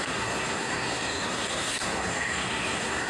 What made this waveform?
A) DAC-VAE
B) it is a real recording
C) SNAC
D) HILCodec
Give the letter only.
C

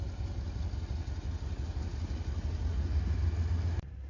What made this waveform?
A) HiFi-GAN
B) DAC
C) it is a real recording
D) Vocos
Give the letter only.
C